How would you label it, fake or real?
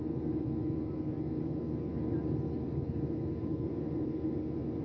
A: real